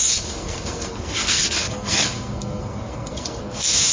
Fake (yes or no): yes